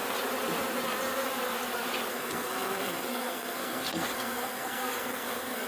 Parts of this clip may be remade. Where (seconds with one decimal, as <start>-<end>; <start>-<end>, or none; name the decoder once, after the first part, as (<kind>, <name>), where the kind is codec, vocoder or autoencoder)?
2.1-5.7 (codec, SNAC)